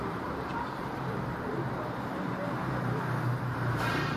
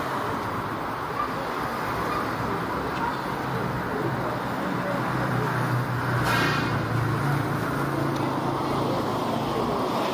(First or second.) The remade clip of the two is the first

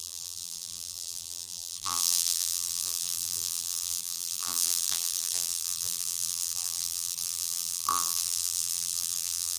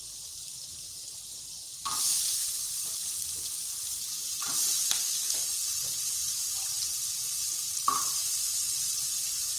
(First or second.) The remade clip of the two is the first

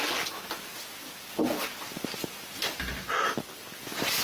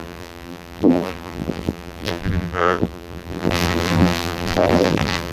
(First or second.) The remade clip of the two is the second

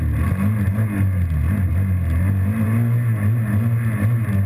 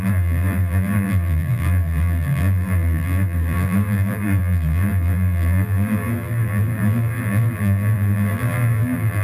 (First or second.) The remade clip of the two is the second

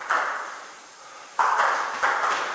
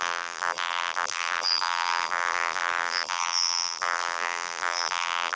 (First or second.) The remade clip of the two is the second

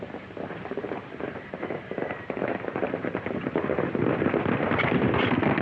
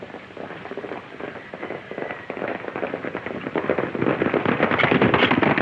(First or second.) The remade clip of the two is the first